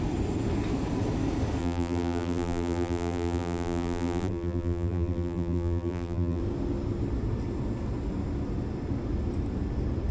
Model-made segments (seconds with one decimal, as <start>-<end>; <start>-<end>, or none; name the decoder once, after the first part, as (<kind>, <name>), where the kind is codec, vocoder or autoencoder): 1.6-6.4 (vocoder, BigVGAN v2)